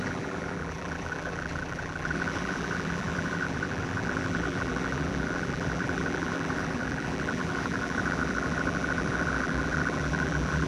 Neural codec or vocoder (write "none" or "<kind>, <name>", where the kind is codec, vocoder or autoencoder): vocoder, BigVGAN v2